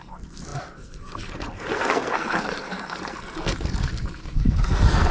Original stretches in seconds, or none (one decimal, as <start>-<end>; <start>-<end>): none